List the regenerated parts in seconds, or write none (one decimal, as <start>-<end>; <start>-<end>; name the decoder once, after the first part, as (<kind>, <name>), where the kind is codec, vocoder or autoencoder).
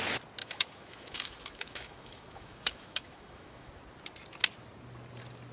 0.4-3.7 (autoencoder, DAC-VAE)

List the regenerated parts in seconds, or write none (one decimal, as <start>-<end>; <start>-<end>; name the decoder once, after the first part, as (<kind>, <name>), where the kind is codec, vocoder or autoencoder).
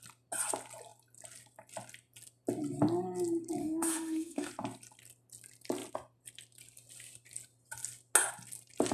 3.6-4.5 (autoencoder, DAC-VAE)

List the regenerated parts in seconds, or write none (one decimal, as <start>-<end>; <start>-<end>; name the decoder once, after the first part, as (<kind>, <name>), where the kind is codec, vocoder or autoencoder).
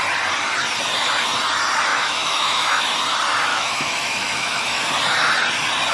1.9-2.8 (autoencoder, DAC-VAE); 3.5-4.8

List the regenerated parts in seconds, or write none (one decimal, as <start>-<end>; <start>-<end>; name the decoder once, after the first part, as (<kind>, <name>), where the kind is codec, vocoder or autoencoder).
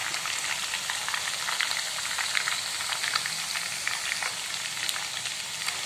none